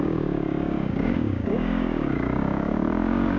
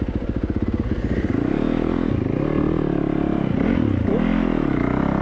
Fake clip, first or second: first